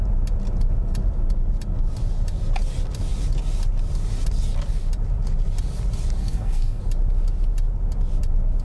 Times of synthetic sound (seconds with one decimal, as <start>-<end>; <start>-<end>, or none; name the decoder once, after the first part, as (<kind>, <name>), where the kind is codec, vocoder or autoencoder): 6.2-6.8 (codec, SNAC)